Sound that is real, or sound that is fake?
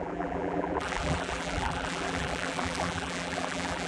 fake